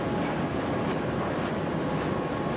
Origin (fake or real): real